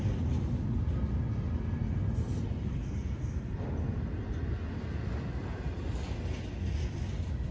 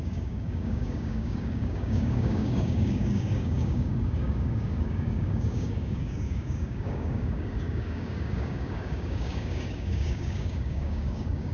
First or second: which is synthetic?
second